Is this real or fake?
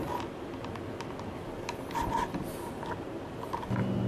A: real